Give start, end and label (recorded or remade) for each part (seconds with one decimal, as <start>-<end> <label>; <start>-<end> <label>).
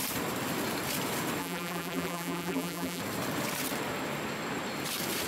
0.0-1.4 recorded; 1.4-3.0 remade; 3.0-5.3 recorded